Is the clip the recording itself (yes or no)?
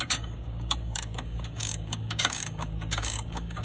no